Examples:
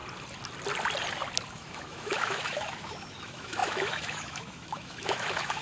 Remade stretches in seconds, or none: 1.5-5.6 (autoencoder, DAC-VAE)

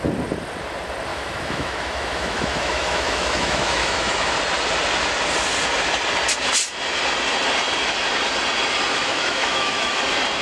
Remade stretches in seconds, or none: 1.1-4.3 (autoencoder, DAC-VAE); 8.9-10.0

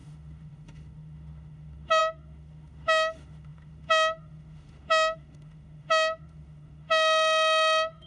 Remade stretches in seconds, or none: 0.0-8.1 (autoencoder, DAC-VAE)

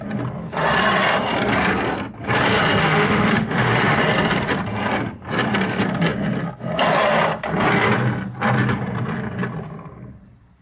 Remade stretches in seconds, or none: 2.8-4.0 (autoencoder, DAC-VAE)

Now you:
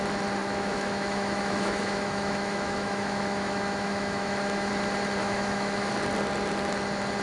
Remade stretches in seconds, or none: 0.4-4.7 (autoencoder, DAC-VAE); 5.2-5.9

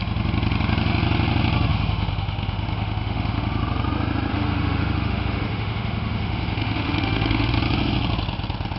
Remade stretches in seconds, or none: 1.7-3.6 (autoencoder, DAC-VAE); 4.3-7.5